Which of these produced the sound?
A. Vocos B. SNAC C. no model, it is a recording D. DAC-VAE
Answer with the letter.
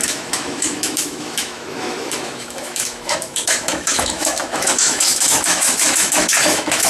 D